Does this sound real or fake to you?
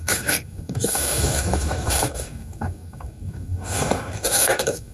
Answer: fake